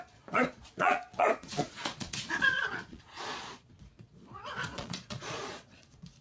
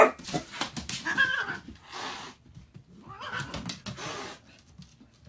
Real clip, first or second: second